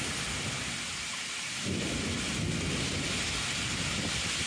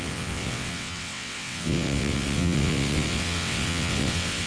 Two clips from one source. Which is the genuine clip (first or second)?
first